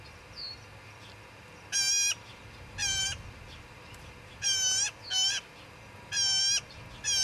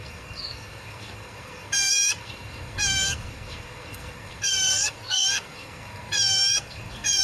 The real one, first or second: first